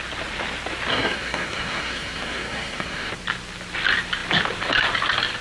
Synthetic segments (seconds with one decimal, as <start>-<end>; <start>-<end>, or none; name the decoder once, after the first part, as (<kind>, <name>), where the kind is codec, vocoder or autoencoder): 0.9-3.1 (codec, SNAC)